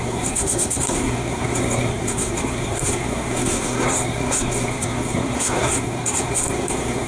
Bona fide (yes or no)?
no